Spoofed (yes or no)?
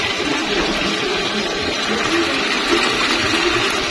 no